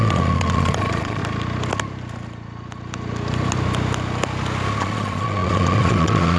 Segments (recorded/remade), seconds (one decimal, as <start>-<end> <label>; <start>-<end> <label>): 0.0-1.2 remade; 1.2-4.8 recorded; 4.8-6.4 remade